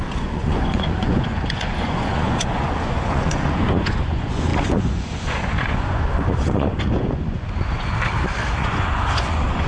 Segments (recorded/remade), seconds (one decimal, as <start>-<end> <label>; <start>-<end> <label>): 0.0-7.9 remade; 7.9-8.6 recorded; 8.6-9.7 remade